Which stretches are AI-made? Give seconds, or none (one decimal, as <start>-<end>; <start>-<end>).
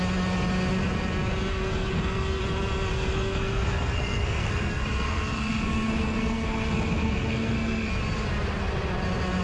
1.5-2.4; 2.9-7.9